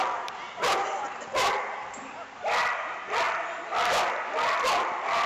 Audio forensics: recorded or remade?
recorded